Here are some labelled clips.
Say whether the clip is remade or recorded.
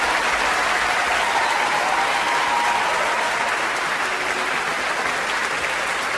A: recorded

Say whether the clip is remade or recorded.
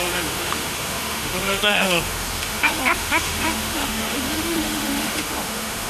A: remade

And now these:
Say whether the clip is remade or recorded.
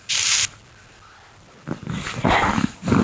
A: recorded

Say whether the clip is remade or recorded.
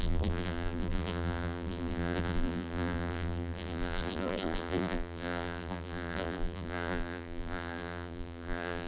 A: remade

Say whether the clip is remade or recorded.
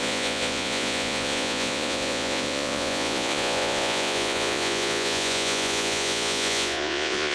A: remade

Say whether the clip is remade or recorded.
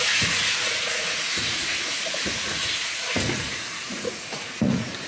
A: remade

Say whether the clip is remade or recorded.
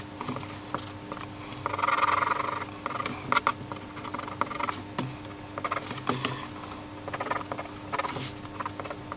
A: recorded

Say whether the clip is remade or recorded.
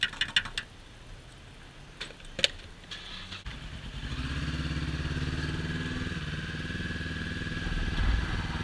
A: recorded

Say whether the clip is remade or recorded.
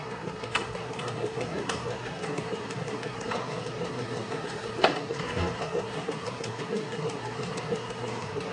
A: remade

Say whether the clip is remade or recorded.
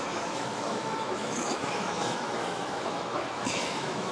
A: remade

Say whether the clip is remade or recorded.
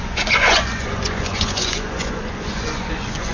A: remade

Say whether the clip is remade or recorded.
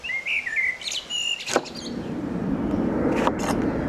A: recorded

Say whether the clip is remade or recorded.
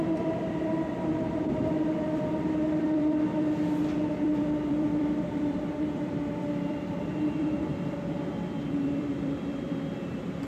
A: remade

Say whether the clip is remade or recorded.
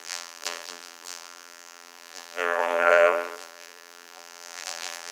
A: remade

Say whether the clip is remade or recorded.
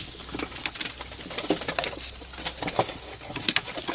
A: recorded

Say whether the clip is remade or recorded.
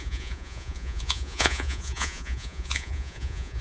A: remade